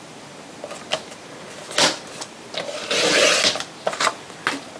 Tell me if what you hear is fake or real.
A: real